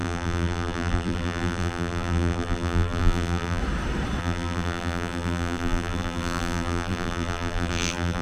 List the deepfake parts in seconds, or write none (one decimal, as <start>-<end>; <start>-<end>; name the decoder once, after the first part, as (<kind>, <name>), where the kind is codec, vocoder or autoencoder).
0.0-3.6 (vocoder, BigVGAN v2); 4.2-8.2